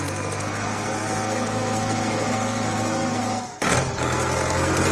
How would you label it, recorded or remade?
remade